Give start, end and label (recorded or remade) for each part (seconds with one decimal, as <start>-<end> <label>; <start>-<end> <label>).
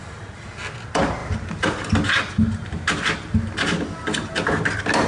0.0-5.1 recorded